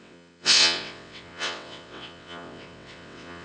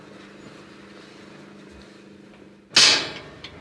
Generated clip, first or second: first